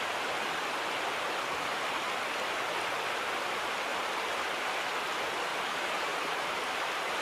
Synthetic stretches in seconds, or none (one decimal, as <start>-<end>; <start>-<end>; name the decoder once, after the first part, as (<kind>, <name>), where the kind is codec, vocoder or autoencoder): 5.5-6.7 (vocoder, BigVGAN v2)